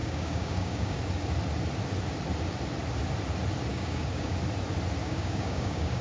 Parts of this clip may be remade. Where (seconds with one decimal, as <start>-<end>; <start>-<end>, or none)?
0.0-1.0; 3.7-4.3; 5.0-6.0